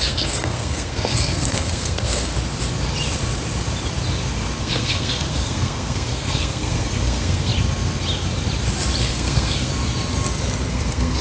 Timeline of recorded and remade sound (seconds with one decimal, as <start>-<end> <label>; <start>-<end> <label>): 0.0-2.3 remade; 2.3-4.6 recorded; 4.6-7.5 remade; 7.5-9.0 recorded; 9.0-9.7 remade; 9.7-10.7 recorded; 10.7-11.2 remade